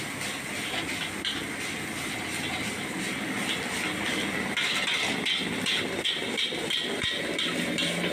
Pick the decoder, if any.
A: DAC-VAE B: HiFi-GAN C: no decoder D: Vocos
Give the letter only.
C